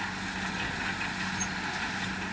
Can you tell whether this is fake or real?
real